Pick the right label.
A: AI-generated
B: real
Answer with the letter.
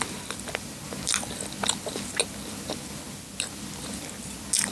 B